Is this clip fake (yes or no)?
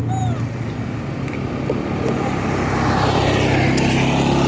no